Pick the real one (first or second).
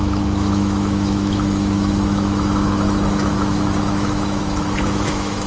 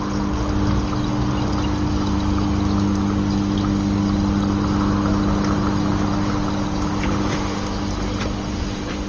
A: second